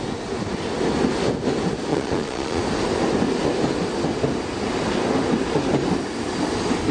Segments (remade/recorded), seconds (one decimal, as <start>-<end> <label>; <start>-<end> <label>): 0.0-1.9 recorded; 1.9-2.6 remade; 2.6-6.9 recorded